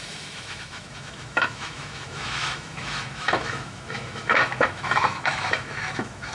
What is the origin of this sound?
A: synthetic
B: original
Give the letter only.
A